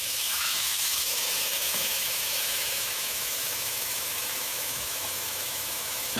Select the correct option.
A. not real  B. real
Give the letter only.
A